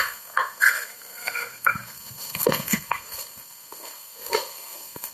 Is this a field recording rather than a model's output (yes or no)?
no